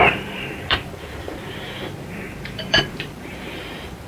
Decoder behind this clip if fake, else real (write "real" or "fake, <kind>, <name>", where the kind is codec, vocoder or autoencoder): fake, vocoder, BigVGAN v2